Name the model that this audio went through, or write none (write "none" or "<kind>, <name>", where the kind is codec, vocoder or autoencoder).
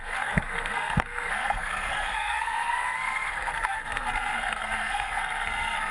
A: codec, SNAC